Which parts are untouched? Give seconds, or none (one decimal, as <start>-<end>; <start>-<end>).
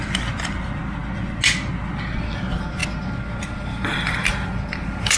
0.0-5.2